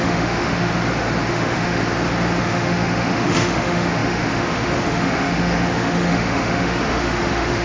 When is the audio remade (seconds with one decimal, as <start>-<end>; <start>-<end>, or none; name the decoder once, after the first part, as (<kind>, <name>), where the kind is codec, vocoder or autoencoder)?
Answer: 0.0-0.7 (autoencoder, DAC-VAE); 1.3-1.8; 2.4-7.6